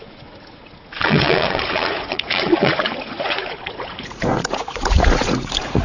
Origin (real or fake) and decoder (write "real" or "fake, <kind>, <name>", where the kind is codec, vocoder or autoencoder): fake, vocoder, Vocos